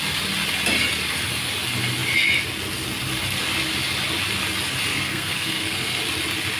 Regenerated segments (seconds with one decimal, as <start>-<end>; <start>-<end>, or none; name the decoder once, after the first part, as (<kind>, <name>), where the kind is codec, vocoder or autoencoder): 4.9-6.0 (codec, SNAC)